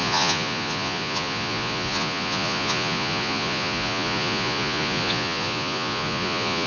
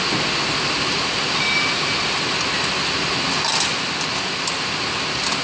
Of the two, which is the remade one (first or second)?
first